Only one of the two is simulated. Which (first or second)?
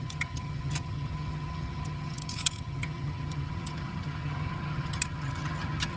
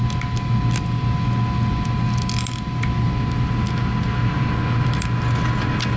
first